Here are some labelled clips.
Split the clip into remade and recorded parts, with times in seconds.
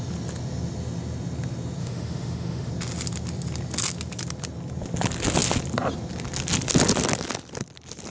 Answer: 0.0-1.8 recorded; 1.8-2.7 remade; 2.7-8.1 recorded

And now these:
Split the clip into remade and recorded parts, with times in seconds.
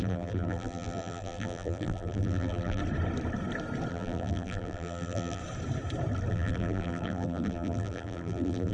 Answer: 0.0-2.8 remade; 2.8-3.9 recorded; 3.9-5.4 remade; 5.4-6.3 recorded; 6.3-8.7 remade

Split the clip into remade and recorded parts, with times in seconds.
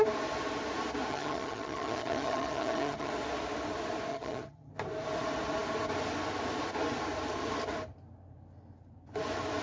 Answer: 0.0-1.1 recorded; 1.1-3.1 remade; 3.1-4.1 recorded; 4.1-4.7 remade; 4.7-9.6 recorded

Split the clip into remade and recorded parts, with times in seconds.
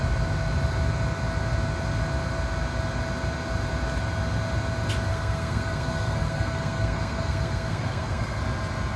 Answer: 0.0-5.1 recorded; 5.1-8.4 remade; 8.4-9.0 recorded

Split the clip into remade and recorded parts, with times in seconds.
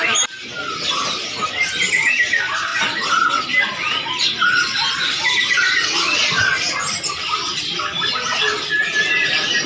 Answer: 0.0-9.7 recorded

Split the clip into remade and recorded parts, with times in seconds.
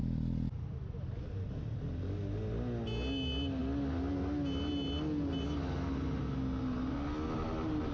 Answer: 0.0-7.9 recorded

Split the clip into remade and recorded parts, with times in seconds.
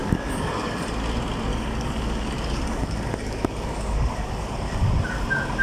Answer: 0.0-0.5 remade; 0.5-1.5 recorded; 1.5-4.9 remade; 4.9-5.6 recorded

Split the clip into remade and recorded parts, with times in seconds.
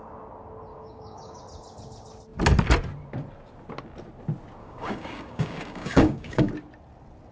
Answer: 0.0-0.7 recorded; 0.7-1.4 remade; 1.4-4.6 recorded; 4.6-6.5 remade; 6.5-7.3 recorded